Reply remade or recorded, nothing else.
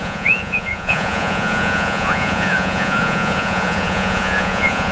remade